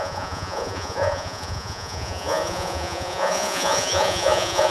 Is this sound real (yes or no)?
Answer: no